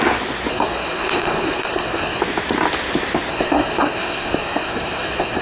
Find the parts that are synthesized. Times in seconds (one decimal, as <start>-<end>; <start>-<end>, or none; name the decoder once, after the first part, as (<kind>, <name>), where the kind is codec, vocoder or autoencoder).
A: 0.5-2.2 (codec, SNAC); 3.3-5.4